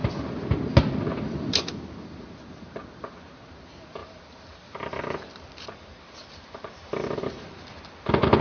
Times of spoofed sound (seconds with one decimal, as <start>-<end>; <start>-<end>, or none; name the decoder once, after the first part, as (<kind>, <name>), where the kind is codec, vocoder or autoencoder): 4.0-7.8 (vocoder, BigVGAN v2)